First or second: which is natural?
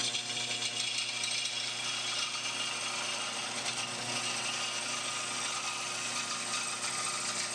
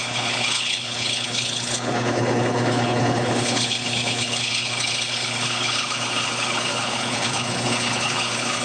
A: first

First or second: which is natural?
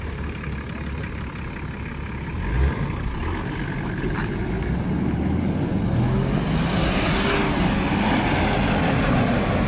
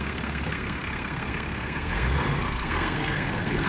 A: first